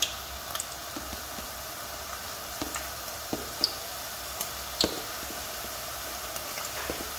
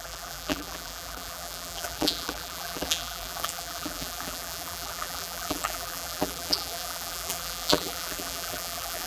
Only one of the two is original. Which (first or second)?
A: first